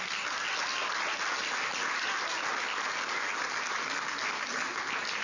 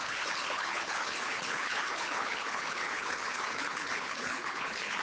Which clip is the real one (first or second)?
first